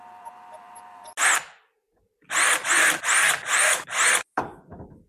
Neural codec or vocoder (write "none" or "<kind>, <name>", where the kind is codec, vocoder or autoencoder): none